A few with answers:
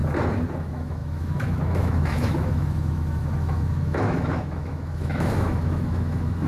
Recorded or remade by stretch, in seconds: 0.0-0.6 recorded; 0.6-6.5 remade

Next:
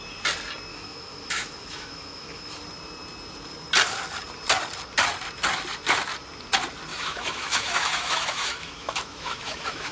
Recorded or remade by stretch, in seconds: 0.0-0.7 recorded; 0.7-2.6 remade; 2.6-6.9 recorded; 6.9-9.9 remade

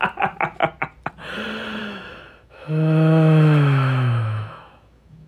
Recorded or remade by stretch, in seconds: 0.0-1.8 recorded; 1.8-5.3 remade

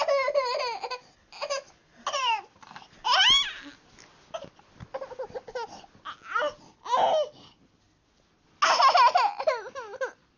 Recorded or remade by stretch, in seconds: 0.0-10.4 recorded

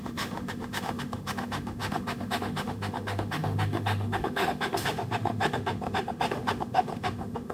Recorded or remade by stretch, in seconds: 0.0-7.5 remade